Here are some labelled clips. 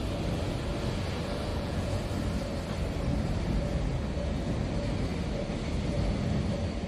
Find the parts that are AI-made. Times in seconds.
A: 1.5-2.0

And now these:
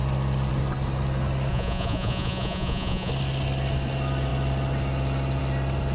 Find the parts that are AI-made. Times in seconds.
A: 1.5-3.1

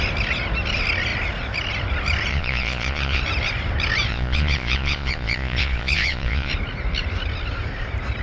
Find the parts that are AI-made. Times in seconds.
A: 2.3-3.2; 4.1-6.5

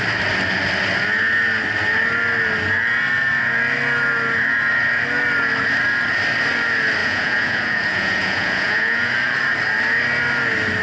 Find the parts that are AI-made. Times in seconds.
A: 7.0-9.1

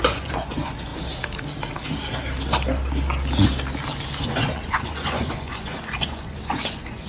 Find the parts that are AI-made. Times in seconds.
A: 0.0-0.9; 4.2-7.1

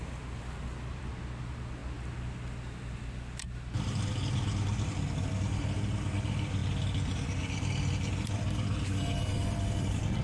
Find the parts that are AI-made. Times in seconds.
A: none